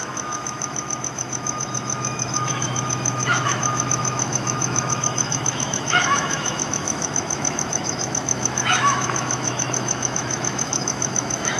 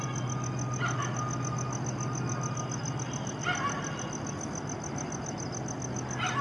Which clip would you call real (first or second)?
second